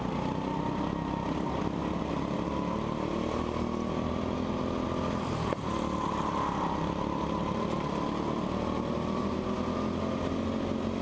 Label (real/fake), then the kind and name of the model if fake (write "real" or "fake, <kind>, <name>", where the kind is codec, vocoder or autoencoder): real